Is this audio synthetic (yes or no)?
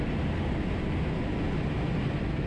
no